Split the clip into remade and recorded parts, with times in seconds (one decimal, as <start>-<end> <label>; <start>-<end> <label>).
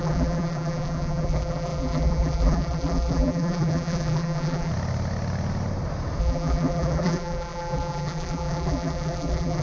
0.0-4.7 remade; 4.7-6.2 recorded; 6.2-9.6 remade